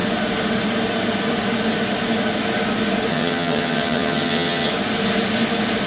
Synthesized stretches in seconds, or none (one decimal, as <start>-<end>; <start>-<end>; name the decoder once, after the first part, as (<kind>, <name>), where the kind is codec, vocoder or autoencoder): 3.1-4.7 (vocoder, HiFi-GAN)